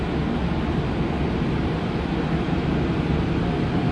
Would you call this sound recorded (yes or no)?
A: yes